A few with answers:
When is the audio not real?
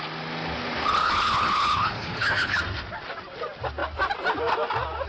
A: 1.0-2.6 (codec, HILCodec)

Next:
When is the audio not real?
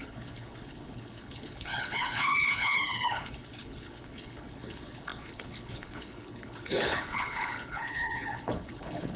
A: 0.0-9.2 (codec, HILCodec)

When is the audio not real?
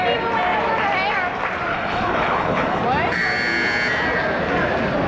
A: 1.7-2.8 (codec, HILCodec)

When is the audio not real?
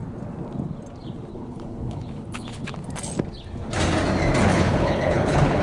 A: 1.3-2.6 (codec, HILCodec); 4.5-5.6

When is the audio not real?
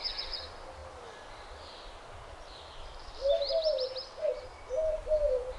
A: none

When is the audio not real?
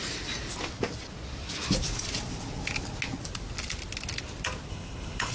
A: 4.7-5.3 (codec, HILCodec)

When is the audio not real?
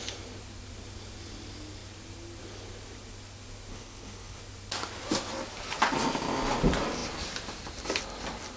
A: 3.7-4.4 (codec, HILCodec)